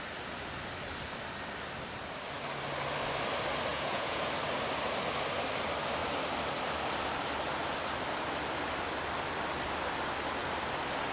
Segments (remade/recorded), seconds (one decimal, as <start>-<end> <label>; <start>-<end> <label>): 0.0-3.7 recorded; 3.7-4.3 remade; 4.3-11.1 recorded